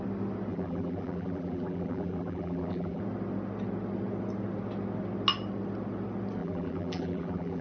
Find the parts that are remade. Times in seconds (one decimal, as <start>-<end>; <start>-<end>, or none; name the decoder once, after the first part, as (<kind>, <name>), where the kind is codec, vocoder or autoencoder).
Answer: 0.5-3.0 (vocoder, BigVGAN v2); 6.4-7.6